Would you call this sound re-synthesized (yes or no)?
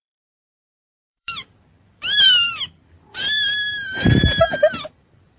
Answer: yes